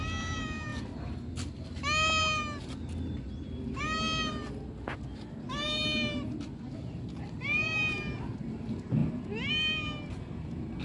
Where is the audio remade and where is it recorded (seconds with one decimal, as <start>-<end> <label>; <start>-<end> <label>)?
0.0-10.8 recorded